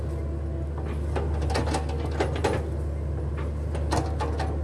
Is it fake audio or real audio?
real